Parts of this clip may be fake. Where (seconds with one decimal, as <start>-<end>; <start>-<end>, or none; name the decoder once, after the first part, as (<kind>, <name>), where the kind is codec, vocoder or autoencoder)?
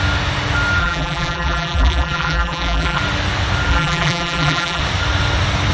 0.8-3.0 (vocoder, BigVGAN v2); 3.7-4.8